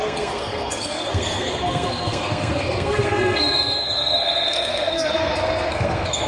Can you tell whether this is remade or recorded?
remade